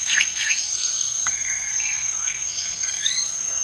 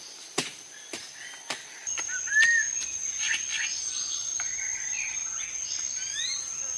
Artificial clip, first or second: first